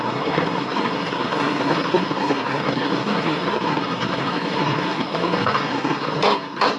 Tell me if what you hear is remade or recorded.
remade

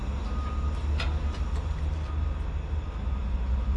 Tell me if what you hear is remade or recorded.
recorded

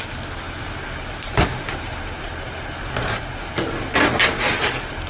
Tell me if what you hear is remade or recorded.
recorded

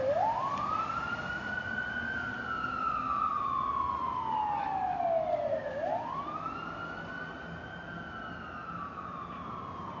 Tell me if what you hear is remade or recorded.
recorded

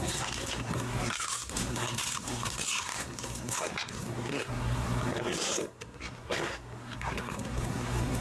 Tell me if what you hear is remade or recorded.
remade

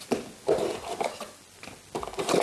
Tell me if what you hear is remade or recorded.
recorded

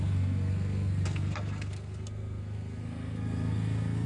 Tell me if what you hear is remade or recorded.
remade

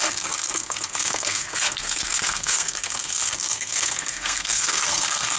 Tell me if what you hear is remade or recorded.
remade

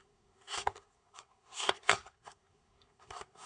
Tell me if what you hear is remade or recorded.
remade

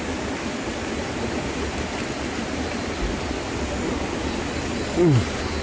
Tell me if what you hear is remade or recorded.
recorded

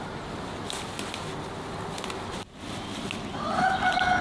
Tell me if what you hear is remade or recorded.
recorded